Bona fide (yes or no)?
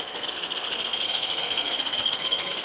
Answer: no